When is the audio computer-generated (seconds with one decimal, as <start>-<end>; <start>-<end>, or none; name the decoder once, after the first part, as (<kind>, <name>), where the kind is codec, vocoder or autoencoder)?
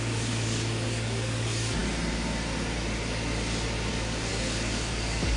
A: 0.0-1.8 (codec, DAC); 3.9-5.4